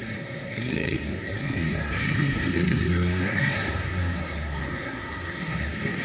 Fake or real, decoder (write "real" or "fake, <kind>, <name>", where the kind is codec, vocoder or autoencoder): fake, codec, SNAC